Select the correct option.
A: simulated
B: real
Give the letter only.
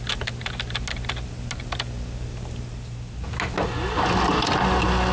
B